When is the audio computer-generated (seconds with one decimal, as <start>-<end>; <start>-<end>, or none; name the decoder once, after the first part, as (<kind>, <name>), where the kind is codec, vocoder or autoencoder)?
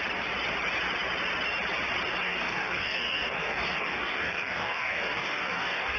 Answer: 2.2-6.0 (codec, DAC)